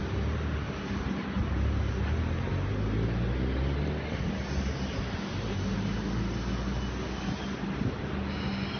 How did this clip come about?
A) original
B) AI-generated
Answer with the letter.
A